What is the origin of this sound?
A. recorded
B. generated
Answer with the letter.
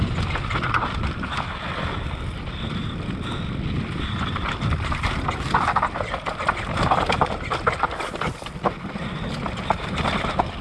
B